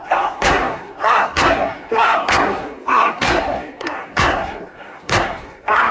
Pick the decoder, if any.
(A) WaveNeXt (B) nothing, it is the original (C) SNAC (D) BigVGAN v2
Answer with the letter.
C